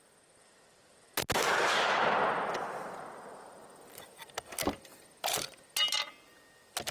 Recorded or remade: recorded